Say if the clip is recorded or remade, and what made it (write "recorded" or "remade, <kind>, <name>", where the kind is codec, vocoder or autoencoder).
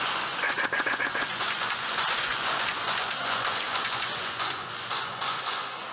remade, vocoder, Vocos